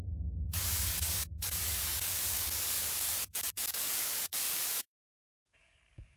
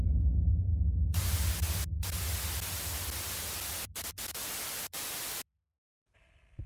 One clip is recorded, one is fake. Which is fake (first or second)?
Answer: first